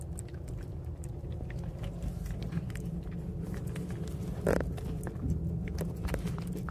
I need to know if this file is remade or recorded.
recorded